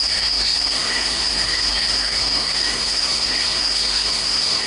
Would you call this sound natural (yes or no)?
no